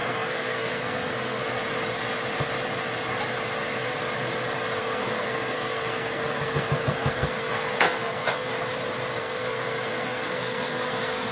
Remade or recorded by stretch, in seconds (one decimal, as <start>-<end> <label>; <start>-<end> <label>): 0.0-1.4 remade; 1.4-4.8 recorded; 4.8-8.5 remade; 8.5-9.2 recorded; 9.2-11.3 remade